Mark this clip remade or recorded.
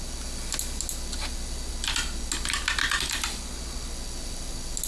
recorded